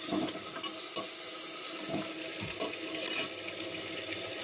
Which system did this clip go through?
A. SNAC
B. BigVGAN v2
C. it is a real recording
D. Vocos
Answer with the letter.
C